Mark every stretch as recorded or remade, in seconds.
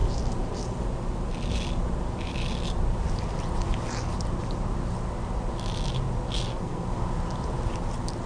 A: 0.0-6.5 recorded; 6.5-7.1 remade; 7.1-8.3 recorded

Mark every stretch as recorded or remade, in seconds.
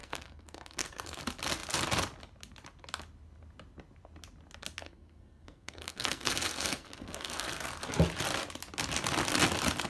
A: 0.0-1.2 remade; 1.2-4.8 recorded; 4.8-7.7 remade; 7.7-9.9 recorded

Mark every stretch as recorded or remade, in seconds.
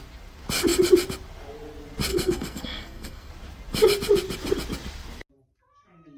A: 0.0-2.1 recorded; 2.1-3.3 remade; 3.3-6.2 recorded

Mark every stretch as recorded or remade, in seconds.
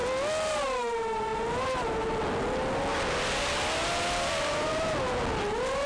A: 0.0-5.9 recorded